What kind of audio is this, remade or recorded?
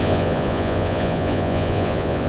remade